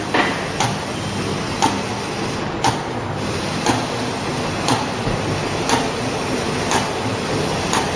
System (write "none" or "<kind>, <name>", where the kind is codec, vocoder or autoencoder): none